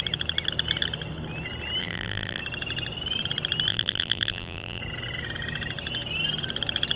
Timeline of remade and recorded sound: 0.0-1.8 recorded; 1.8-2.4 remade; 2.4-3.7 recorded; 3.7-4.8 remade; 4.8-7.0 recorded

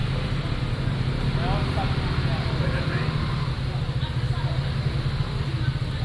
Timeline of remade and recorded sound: 0.0-6.0 recorded

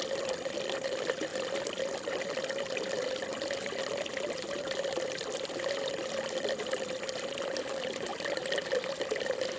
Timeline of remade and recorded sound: 0.0-1.3 remade; 1.3-2.2 recorded; 2.2-9.6 remade

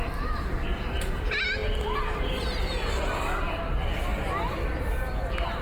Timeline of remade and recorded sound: 0.0-4.1 remade; 4.1-5.6 recorded

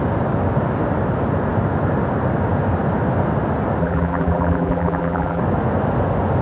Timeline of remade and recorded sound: 0.0-3.8 recorded; 3.8-5.4 remade; 5.4-6.4 recorded

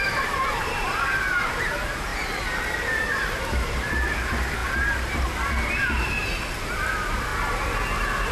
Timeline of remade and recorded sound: 0.0-2.1 remade; 2.1-3.4 recorded; 3.4-7.3 remade; 7.3-8.3 recorded

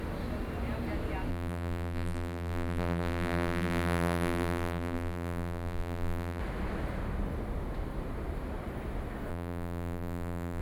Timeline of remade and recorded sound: 0.0-1.3 recorded; 1.3-6.4 remade; 6.4-9.3 recorded; 9.3-10.6 remade

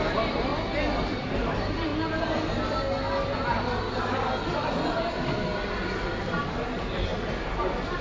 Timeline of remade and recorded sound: 0.0-0.5 remade; 0.5-1.2 recorded; 1.2-1.9 remade; 1.9-4.9 recorded; 4.9-5.5 remade; 5.5-6.4 recorded; 6.4-7.1 remade; 7.1-8.0 recorded